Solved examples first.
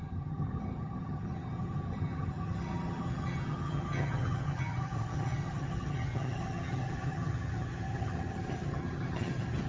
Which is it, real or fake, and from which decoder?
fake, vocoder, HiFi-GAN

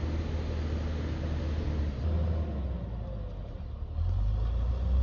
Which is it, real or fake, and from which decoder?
real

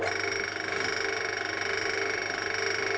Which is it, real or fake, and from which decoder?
real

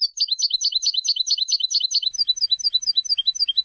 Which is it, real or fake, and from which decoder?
real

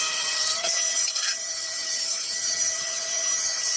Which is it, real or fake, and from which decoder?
fake, vocoder, HiFi-GAN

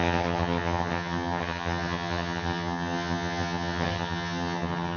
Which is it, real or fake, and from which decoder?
fake, vocoder, HiFi-GAN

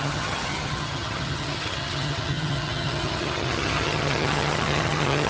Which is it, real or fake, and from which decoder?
fake, vocoder, HiFi-GAN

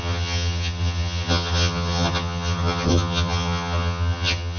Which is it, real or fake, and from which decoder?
fake, vocoder, HiFi-GAN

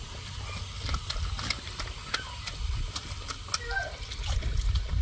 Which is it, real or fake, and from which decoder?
real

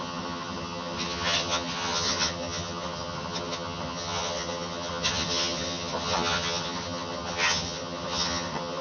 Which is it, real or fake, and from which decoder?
fake, vocoder, HiFi-GAN